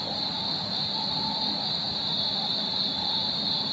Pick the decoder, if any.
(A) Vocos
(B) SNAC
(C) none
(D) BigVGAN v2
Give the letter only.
D